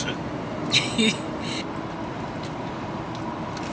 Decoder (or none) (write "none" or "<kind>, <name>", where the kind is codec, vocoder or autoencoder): none